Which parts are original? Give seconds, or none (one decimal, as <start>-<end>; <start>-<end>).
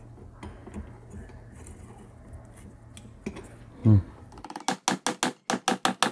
0.0-0.6; 1.7-3.8; 4.6-6.1